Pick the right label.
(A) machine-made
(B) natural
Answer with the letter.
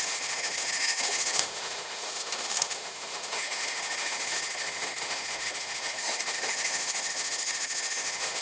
A